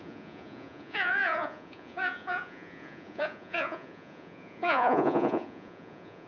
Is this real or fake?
fake